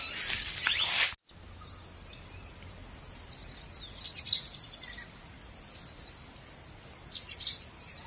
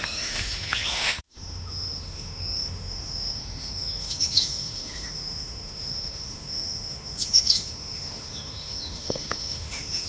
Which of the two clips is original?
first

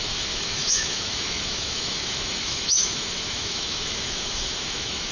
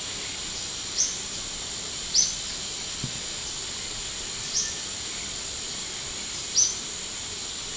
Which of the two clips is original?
second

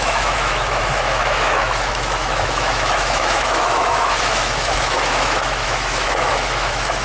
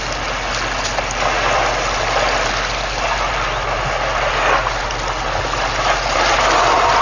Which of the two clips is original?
second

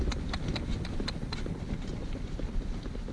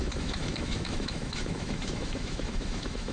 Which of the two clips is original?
first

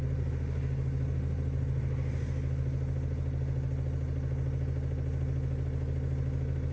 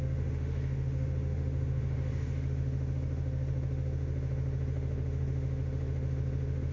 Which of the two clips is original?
first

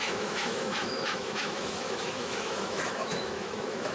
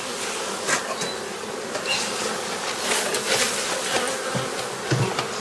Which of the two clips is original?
second